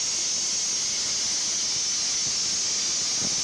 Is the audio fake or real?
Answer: real